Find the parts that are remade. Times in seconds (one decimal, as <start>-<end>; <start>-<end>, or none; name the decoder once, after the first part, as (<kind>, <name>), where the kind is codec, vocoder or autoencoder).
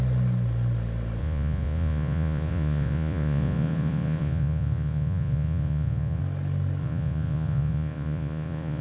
1.2-6.2 (vocoder, Vocos); 6.8-8.8